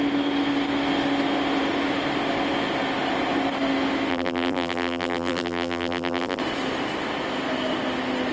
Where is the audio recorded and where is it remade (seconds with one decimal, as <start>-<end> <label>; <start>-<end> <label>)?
0.0-4.1 recorded; 4.1-6.4 remade; 6.4-8.3 recorded